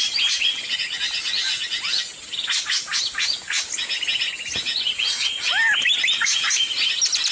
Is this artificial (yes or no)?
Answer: no